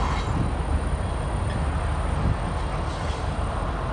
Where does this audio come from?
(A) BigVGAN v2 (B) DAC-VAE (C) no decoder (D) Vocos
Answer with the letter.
C